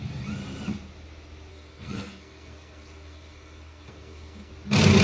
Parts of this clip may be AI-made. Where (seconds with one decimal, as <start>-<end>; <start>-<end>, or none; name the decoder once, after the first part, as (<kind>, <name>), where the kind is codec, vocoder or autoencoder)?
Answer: 1.5-4.5 (codec, SNAC)